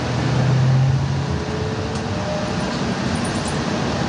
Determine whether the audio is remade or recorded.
recorded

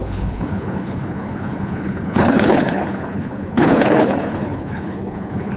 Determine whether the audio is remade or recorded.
remade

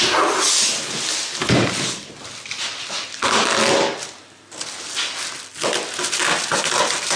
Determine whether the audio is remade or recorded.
recorded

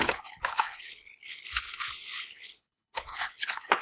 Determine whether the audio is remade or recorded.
remade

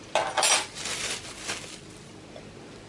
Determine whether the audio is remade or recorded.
recorded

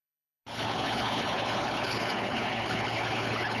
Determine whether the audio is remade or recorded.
remade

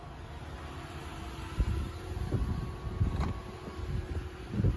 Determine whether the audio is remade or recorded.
recorded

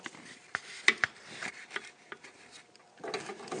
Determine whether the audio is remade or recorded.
recorded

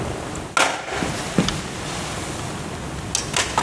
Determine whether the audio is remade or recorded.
recorded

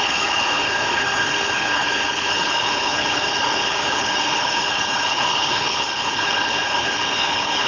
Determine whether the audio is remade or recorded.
remade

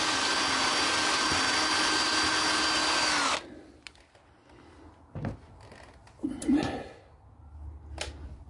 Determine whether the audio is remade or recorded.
recorded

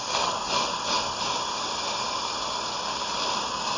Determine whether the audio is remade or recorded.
recorded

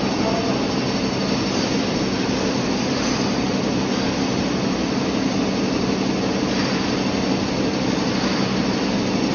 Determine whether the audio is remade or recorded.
recorded